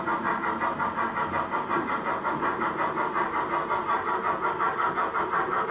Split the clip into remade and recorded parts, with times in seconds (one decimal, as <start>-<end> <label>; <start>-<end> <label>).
0.0-5.7 recorded